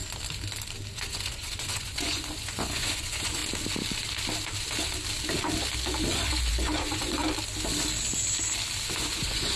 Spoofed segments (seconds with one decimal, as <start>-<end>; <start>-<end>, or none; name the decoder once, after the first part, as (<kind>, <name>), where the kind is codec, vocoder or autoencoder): 0.9-3.4 (vocoder, Vocos); 6.0-7.2; 8.9-9.6